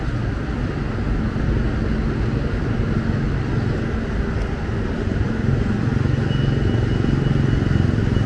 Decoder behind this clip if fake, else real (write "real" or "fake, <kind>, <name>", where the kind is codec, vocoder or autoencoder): real